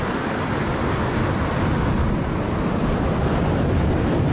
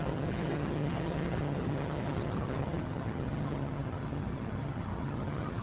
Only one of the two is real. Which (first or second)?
first